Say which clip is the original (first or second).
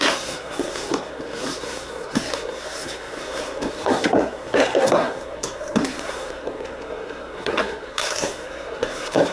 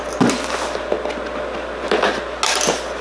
second